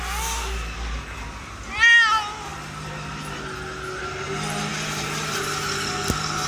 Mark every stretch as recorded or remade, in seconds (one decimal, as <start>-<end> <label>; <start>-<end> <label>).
0.0-6.5 recorded